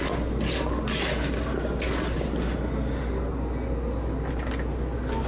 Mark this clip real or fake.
real